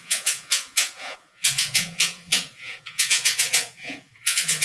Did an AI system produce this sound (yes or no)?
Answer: yes